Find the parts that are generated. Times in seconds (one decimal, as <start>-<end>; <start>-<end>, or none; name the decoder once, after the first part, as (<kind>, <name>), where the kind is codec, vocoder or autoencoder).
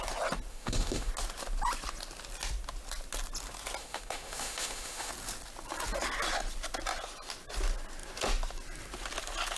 0.5-1.1 (autoencoder, DAC-VAE); 3.8-5.1